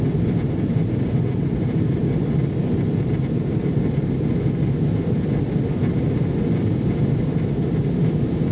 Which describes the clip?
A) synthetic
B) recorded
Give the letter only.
B